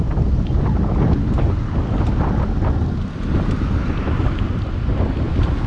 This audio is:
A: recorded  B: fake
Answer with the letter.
A